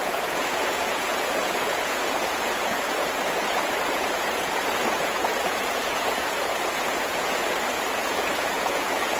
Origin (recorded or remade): remade